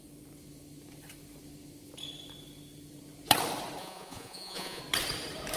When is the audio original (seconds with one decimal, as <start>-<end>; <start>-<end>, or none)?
0.0-3.8; 4.8-5.6